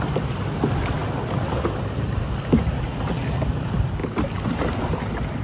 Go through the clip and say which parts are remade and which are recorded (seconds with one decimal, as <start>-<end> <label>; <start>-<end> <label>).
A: 0.0-1.0 remade; 1.0-3.1 recorded; 3.1-5.4 remade